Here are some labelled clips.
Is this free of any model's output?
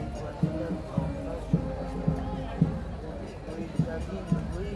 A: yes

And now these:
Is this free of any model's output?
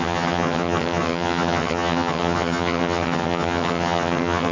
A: no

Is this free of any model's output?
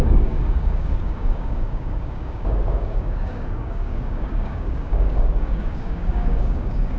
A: no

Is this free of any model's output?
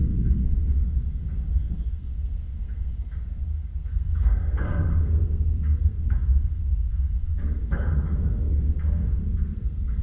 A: no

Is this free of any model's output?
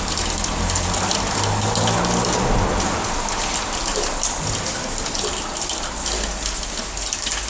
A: yes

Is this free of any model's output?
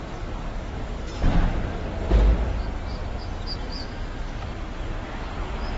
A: yes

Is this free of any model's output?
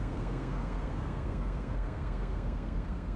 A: no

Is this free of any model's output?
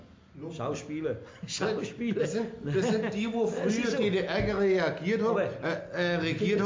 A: yes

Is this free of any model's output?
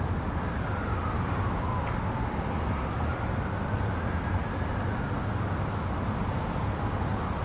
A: yes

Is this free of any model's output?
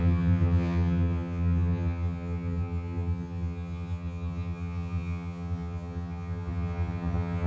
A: no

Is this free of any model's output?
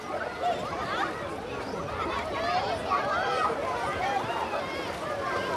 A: no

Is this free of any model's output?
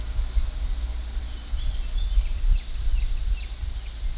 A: yes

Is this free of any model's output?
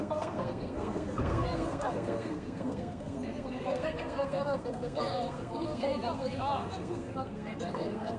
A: no